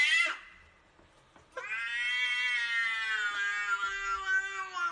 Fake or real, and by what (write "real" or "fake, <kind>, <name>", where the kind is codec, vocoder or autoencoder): real